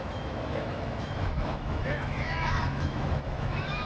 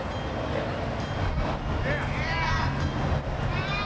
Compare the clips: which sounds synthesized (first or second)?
first